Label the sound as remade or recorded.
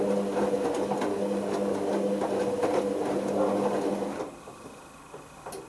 recorded